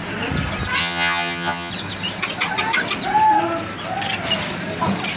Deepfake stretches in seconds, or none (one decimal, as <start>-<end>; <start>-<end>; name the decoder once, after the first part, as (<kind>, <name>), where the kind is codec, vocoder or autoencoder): 0.8-1.7 (vocoder, HiFi-GAN)